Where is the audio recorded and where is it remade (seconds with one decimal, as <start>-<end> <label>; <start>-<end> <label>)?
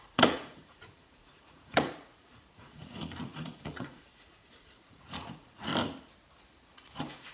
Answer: 0.0-5.7 remade; 5.7-6.4 recorded; 6.4-7.3 remade